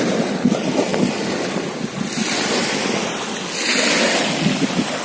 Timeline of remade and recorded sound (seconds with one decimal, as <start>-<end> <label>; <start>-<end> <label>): 0.0-5.0 recorded